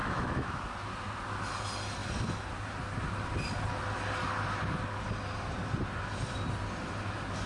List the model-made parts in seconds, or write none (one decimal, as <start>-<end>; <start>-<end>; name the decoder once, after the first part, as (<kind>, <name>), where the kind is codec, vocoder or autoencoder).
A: 0.0-0.6 (autoencoder, DAC-VAE)